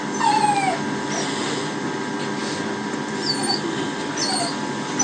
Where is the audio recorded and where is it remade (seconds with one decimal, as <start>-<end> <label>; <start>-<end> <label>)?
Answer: 0.0-5.0 recorded